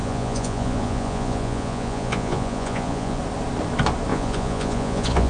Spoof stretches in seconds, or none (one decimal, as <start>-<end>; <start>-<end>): 0.0-3.2; 4.1-5.3